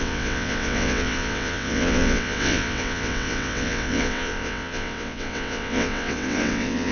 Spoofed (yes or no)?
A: yes